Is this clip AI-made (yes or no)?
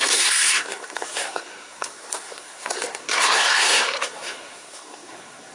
yes